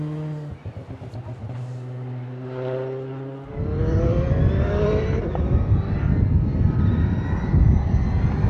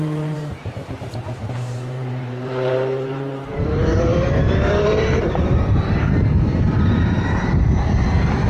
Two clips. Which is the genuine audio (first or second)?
first